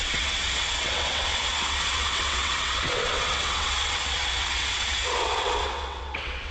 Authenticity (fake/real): fake